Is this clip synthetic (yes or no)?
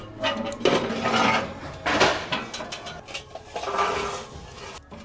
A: no